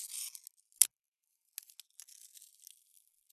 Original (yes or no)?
yes